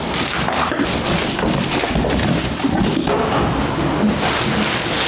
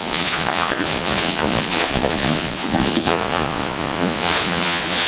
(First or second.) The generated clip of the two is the second